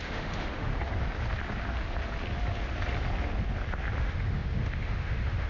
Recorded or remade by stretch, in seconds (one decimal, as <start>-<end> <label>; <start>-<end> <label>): 0.0-0.7 remade; 0.7-4.0 recorded; 4.0-5.5 remade